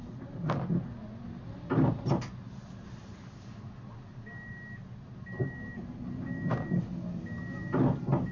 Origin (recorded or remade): recorded